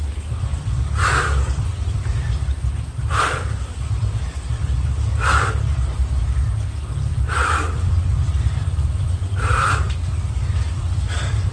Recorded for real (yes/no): no